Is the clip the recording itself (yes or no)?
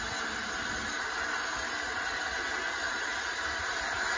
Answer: yes